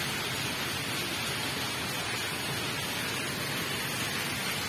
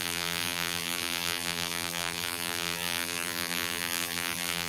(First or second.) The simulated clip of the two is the second